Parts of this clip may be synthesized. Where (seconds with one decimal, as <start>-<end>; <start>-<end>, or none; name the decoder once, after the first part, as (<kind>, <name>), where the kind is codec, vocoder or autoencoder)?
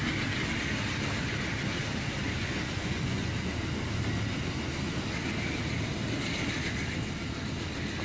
2.4-3.3 (vocoder, Vocos)